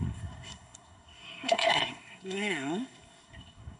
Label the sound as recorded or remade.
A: remade